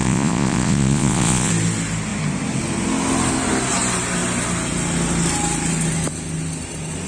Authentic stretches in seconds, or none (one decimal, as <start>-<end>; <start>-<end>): 1.5-7.1

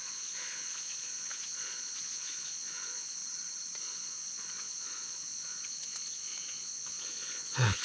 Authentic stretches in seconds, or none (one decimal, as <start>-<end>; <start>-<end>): 3.2-3.8